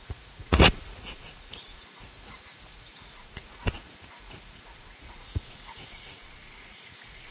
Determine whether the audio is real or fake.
fake